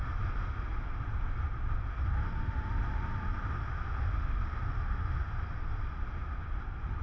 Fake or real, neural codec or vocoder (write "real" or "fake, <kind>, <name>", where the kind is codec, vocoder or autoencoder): real